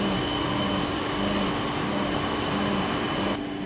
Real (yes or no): yes